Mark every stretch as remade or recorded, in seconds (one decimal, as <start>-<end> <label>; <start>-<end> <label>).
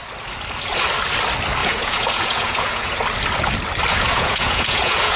0.0-1.6 recorded; 1.6-3.0 remade; 3.0-3.9 recorded; 3.9-5.2 remade